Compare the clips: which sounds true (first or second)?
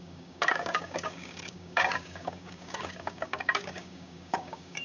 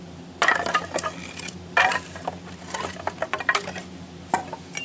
second